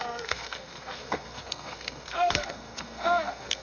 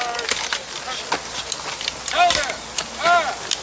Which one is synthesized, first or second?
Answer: first